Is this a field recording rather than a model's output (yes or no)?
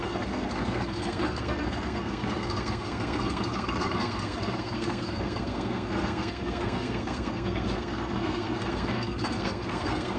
no